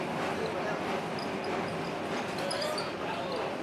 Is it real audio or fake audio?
real